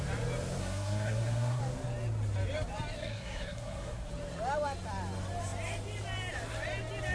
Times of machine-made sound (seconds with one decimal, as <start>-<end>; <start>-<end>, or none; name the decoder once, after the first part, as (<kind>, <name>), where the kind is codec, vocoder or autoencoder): 0.6-1.6 (codec, SNAC); 3.0-4.1

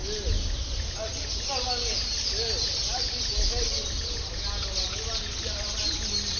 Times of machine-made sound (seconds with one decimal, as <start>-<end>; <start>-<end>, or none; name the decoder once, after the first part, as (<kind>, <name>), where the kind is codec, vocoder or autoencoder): none

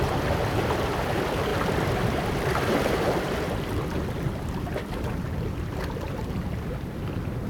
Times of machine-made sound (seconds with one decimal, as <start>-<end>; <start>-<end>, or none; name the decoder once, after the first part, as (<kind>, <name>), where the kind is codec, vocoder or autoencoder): none

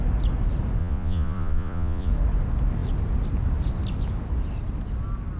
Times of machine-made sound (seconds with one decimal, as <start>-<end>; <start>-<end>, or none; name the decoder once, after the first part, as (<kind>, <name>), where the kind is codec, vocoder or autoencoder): 0.8-2.1 (vocoder, Vocos)

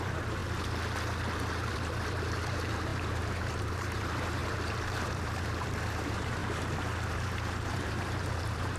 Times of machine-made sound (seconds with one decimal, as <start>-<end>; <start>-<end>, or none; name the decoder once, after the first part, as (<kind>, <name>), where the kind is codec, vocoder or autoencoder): 0.0-0.4 (vocoder, BigVGAN v2); 1.7-6.4; 7.1-8.8

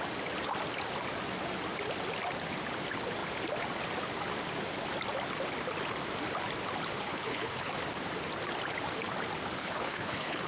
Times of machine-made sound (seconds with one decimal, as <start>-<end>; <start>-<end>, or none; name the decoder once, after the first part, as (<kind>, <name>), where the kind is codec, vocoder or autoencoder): 7.1-7.7 (codec, HILCodec); 9.6-10.5